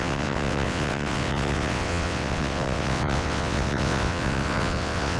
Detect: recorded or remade remade